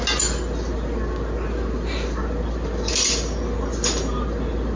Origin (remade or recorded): recorded